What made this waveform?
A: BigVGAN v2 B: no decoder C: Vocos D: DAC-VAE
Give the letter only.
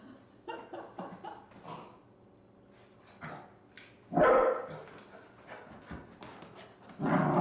B